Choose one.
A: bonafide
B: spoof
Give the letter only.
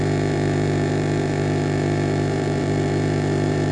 B